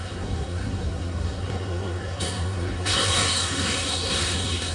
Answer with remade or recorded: remade